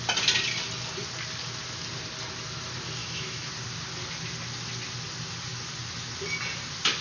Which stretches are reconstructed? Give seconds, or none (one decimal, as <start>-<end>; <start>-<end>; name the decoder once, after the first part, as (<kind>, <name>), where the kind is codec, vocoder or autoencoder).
3.0-3.5 (autoencoder, DAC-VAE)